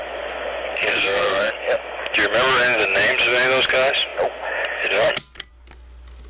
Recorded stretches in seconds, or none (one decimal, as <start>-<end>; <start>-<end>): 0.0-0.9; 1.5-6.3

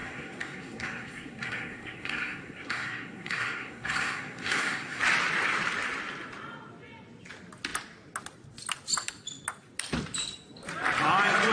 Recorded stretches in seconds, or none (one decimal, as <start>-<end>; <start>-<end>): 5.0-11.5

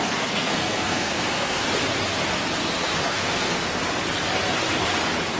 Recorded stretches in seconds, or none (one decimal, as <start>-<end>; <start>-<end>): 1.6-3.0; 3.8-5.4

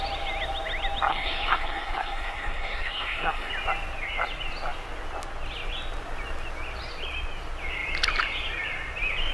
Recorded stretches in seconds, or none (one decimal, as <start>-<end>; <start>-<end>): 0.0-1.1; 3.5-9.3